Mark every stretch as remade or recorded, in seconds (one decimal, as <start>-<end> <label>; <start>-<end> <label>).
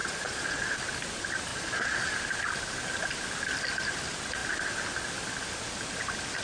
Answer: 0.0-0.8 remade; 0.8-1.5 recorded; 1.5-2.1 remade; 2.1-6.4 recorded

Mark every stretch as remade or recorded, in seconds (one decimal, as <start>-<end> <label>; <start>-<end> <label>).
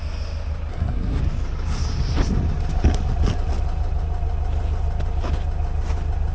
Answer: 0.0-0.7 recorded; 0.7-1.2 remade; 1.2-6.3 recorded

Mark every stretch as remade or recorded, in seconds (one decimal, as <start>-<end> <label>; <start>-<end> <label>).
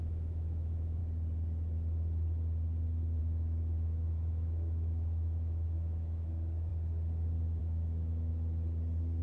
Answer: 0.0-1.0 remade; 1.0-3.2 recorded; 3.2-6.7 remade; 6.7-7.6 recorded; 7.6-8.3 remade; 8.3-9.2 recorded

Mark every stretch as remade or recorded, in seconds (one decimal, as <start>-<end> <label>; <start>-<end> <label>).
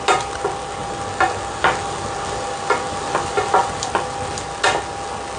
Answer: 0.0-5.4 recorded